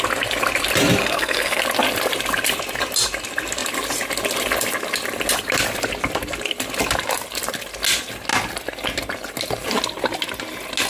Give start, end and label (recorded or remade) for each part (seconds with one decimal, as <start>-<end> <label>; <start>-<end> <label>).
0.0-1.0 recorded; 1.0-1.6 remade; 1.6-10.9 recorded